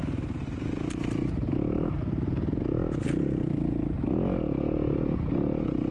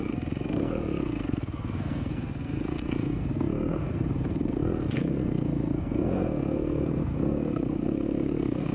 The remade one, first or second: second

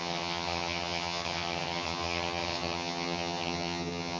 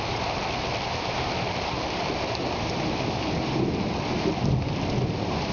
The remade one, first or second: first